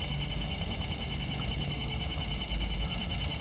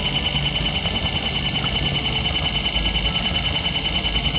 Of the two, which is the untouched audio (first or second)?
second